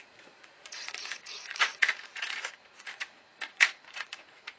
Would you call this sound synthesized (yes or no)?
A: yes